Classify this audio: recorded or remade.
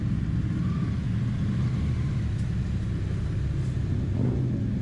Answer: recorded